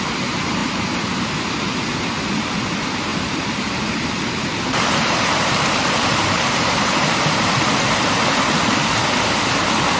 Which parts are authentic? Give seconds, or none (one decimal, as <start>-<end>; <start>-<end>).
0.0-0.6; 1.3-3.1; 7.5-10.0